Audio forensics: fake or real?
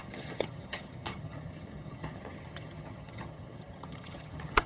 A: fake